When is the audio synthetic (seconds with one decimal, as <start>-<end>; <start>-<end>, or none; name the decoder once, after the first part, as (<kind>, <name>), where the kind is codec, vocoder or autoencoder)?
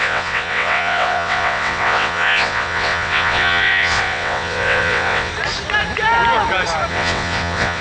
0.0-5.3 (vocoder, WaveNeXt); 6.9-7.8